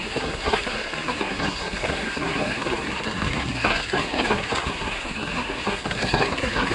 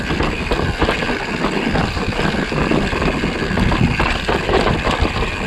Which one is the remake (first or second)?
first